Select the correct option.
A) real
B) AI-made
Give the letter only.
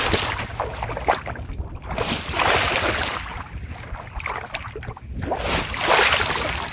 A